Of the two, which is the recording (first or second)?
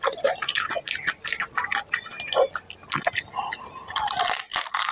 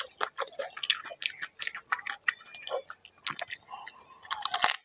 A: second